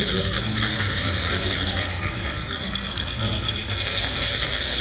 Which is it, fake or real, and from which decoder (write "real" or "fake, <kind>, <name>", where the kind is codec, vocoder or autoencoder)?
fake, codec, SNAC